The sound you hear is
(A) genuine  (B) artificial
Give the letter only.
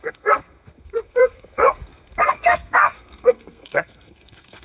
B